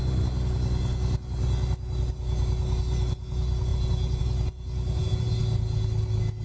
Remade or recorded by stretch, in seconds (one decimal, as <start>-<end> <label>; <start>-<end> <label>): 0.0-6.4 recorded

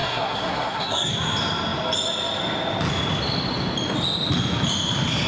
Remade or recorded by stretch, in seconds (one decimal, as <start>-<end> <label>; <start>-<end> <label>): 0.0-1.1 remade; 1.1-5.3 recorded

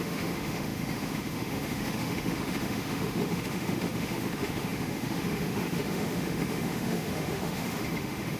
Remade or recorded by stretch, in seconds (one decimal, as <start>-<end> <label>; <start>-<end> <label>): 0.0-8.4 remade